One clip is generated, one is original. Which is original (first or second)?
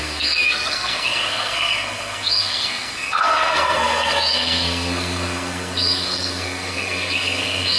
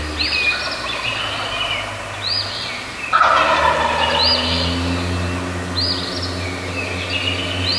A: second